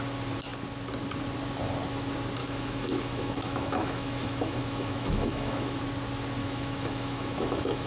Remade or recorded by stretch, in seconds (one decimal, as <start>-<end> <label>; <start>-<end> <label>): 0.0-2.4 recorded; 2.4-5.8 remade; 5.8-6.4 recorded; 6.4-7.9 remade